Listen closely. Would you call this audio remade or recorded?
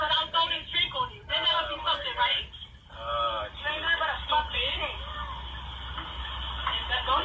recorded